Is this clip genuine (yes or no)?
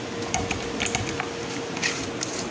yes